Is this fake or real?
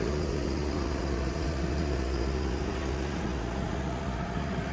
fake